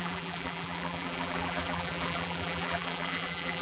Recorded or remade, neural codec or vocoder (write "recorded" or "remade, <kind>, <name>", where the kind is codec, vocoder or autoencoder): remade, vocoder, BigVGAN v2